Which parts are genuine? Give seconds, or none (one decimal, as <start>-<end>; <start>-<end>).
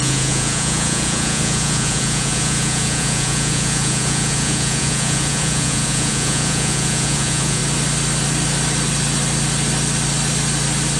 7.6-11.0